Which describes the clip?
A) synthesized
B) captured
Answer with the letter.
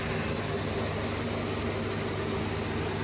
B